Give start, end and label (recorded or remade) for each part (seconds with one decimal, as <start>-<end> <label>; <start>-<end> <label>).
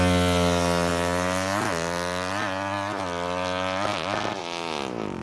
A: 0.0-5.2 recorded